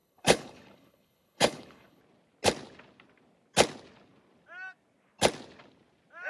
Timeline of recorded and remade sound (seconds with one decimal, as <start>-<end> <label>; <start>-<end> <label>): 0.0-2.0 remade; 2.0-6.3 recorded